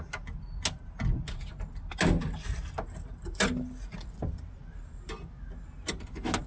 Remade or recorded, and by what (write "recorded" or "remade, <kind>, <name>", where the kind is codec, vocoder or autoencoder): recorded